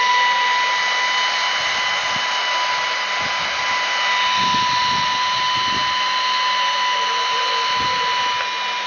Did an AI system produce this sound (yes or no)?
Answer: no